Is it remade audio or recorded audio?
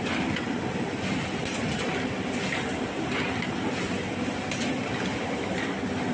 recorded